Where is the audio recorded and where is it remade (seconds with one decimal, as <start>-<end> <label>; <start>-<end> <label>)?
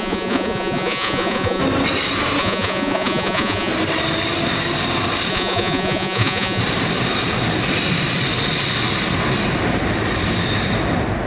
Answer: 0.0-1.6 remade; 1.6-2.4 recorded; 2.4-3.7 remade; 3.7-5.3 recorded; 5.3-6.6 remade; 6.6-11.3 recorded